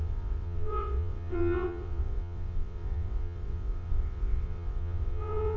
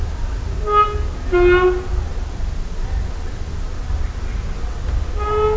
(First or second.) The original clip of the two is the second